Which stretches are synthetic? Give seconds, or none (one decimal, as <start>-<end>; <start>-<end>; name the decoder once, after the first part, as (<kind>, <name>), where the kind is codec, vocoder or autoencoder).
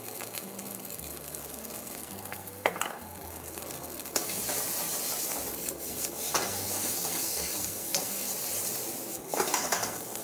0.0-4.4 (codec, SNAC); 5.5-8.3; 9.1-10.2